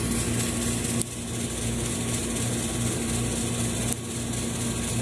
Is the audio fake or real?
real